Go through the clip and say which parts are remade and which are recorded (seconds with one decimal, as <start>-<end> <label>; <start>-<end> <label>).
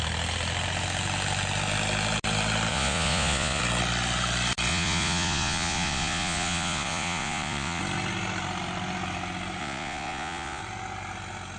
0.0-2.7 recorded; 2.7-3.6 remade; 3.6-4.7 recorded; 4.7-7.8 remade; 7.8-9.6 recorded; 9.6-10.6 remade; 10.6-11.6 recorded